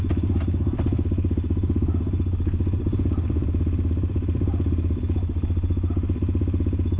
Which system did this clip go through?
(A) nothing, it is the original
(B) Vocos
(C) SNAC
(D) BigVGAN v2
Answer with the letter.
A